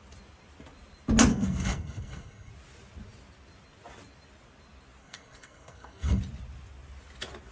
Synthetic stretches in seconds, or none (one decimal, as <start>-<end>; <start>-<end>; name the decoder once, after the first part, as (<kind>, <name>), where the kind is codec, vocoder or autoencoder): 1.3-2.5 (codec, SNAC); 5.0-6.2